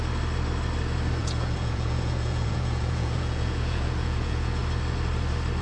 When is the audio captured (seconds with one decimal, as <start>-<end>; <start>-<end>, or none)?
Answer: 0.0-1.2; 4.6-5.6